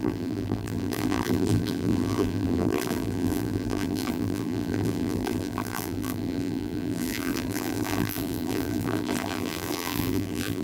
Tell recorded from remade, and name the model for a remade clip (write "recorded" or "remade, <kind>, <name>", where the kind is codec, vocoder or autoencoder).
remade, vocoder, BigVGAN v2